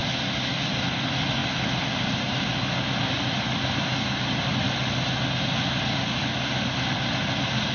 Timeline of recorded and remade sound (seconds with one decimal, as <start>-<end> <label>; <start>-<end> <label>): 0.0-7.7 recorded